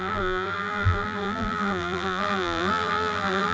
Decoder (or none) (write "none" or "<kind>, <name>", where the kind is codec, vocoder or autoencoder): vocoder, BigVGAN v2